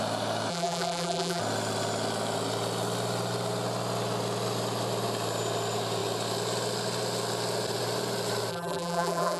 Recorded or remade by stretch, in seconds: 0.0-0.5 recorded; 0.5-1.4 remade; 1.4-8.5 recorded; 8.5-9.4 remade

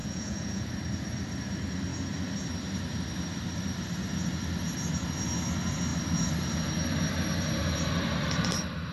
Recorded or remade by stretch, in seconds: 0.0-0.7 remade; 0.7-8.9 recorded

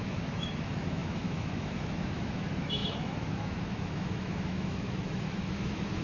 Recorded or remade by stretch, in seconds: 0.0-6.0 remade

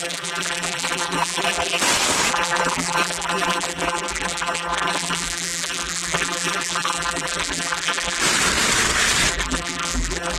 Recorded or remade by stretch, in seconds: 0.0-1.8 remade; 1.8-2.3 recorded; 2.3-8.2 remade; 8.2-9.3 recorded; 9.3-10.4 remade

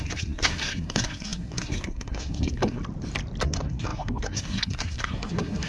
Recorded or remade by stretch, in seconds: 0.0-2.8 remade; 2.8-3.4 recorded; 3.4-5.7 remade

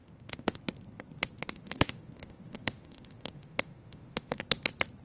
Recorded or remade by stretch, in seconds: 0.0-0.6 remade; 0.6-1.4 recorded; 1.4-4.4 remade; 4.4-5.0 recorded

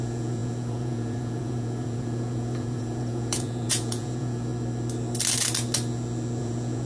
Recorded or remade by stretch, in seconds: 0.0-4.5 remade; 4.5-6.4 recorded; 6.4-6.9 remade